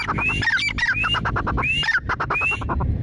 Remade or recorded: remade